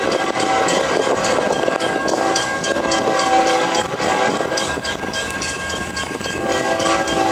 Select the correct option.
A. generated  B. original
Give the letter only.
A